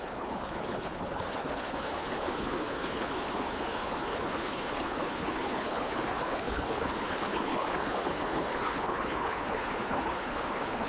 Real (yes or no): no